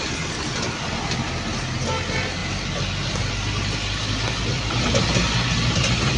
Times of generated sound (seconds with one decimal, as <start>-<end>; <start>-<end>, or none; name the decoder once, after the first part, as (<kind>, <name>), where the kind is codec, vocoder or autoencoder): none